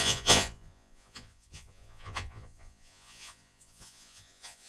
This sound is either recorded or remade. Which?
remade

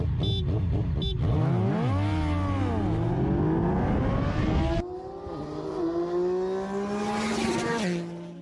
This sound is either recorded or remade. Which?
recorded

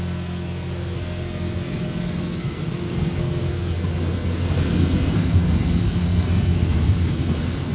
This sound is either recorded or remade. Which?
remade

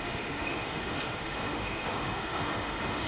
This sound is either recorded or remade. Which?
remade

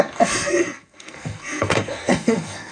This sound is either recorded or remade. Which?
remade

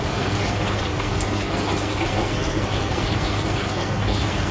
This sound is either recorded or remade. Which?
remade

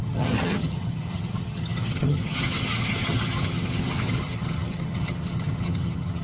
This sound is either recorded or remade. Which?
remade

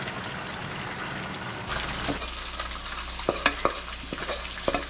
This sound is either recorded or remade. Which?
recorded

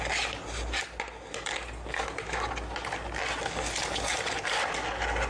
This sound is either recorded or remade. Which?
recorded